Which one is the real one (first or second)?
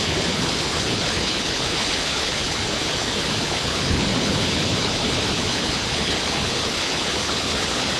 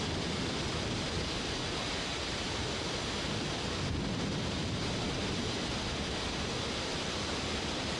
second